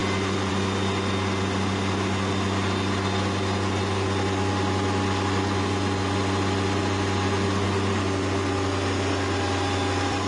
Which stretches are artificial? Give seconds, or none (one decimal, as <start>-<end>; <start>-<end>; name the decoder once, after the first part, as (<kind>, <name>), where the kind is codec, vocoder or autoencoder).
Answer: none

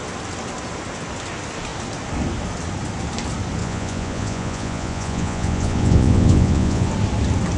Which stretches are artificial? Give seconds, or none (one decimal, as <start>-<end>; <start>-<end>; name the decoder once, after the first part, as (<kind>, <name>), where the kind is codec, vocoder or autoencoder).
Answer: 3.6-6.9 (vocoder, Vocos)